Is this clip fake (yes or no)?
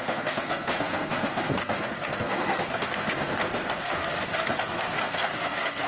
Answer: yes